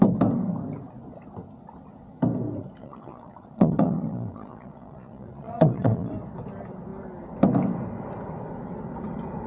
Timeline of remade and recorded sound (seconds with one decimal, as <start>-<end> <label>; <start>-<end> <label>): 0.0-2.8 recorded; 2.8-6.1 remade; 6.1-9.5 recorded